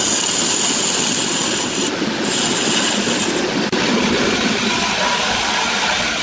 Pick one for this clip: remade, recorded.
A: recorded